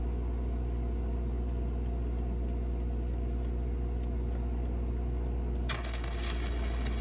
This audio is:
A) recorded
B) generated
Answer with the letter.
A